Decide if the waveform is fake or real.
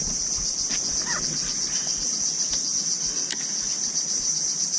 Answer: real